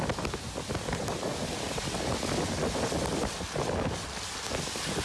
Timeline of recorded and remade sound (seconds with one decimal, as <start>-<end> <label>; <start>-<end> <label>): 0.0-5.0 recorded